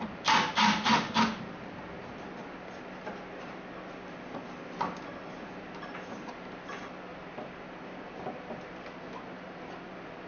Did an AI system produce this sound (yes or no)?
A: no